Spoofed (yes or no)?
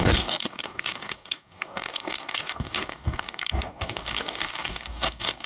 yes